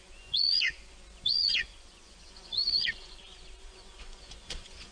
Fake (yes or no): yes